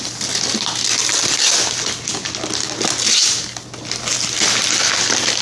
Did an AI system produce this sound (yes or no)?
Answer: no